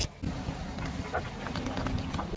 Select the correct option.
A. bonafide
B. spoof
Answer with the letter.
A